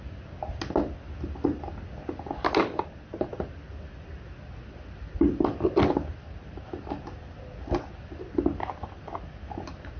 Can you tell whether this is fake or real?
real